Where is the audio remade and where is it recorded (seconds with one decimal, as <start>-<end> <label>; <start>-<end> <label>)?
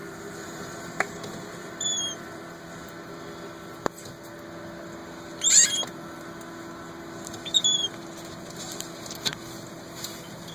0.0-2.6 remade; 2.6-10.5 recorded